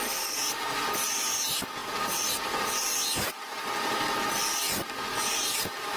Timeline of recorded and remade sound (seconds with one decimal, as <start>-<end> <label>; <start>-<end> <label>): 0.0-6.0 recorded